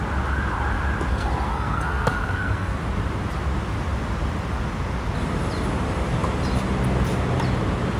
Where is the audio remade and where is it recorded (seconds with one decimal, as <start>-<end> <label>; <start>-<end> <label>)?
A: 0.0-1.1 recorded; 1.1-2.8 remade; 2.8-8.0 recorded